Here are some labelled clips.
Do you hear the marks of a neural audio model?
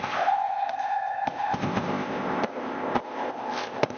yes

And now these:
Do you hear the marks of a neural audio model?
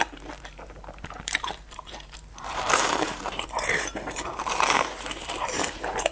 yes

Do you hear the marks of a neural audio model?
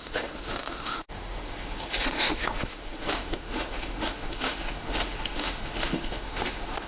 yes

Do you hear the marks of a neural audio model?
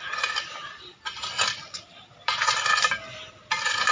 no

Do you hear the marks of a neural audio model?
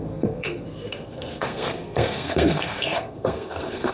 yes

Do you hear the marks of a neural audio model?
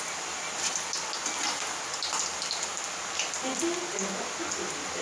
no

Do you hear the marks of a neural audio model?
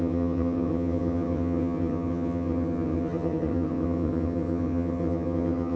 yes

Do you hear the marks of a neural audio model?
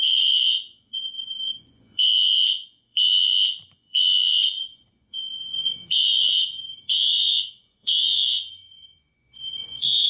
yes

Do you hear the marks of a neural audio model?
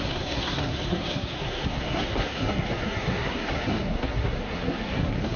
yes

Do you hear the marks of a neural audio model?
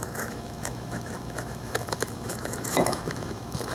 yes